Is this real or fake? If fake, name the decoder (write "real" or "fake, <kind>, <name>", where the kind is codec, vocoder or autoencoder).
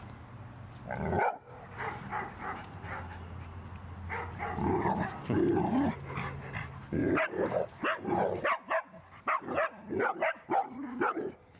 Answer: real